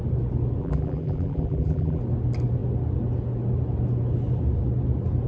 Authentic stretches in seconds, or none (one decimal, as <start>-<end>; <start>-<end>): 0.0-0.6; 2.0-5.3